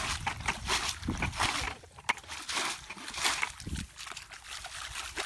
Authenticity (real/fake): real